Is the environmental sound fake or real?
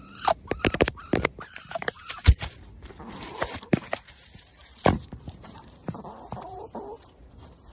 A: fake